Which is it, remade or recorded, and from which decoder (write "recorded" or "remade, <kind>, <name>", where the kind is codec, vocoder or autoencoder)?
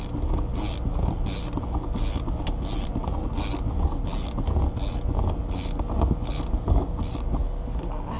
recorded